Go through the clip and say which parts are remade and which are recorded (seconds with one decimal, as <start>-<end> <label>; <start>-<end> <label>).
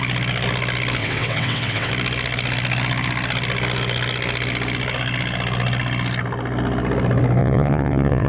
0.0-1.0 recorded; 1.0-1.9 remade; 1.9-7.4 recorded; 7.4-8.3 remade